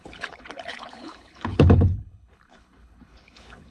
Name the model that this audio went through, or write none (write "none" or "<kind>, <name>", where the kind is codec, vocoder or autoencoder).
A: codec, HILCodec